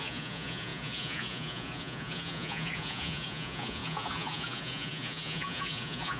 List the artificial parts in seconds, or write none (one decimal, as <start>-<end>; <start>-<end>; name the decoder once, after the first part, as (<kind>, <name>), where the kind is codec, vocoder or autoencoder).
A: 0.0-6.2 (vocoder, Vocos)